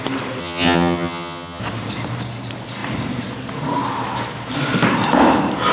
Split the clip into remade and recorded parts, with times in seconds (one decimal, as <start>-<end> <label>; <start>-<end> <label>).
0.0-0.4 recorded; 0.4-1.6 remade; 1.6-5.7 recorded